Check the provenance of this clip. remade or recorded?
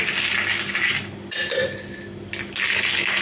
recorded